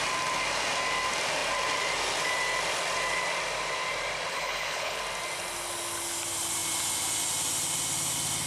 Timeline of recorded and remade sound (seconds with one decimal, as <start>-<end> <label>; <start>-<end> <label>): 0.0-4.3 recorded; 4.3-5.0 remade; 5.0-8.5 recorded